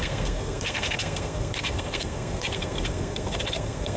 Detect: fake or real fake